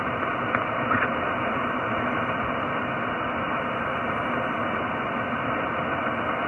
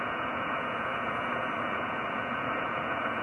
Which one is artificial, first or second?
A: second